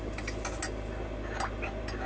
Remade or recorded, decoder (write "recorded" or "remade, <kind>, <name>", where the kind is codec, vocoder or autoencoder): recorded